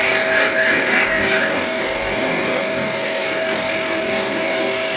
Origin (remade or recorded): remade